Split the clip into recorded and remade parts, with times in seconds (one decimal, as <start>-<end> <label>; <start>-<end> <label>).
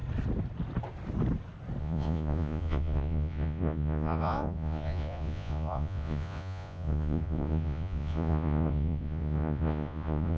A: 0.0-1.8 recorded; 1.8-10.4 remade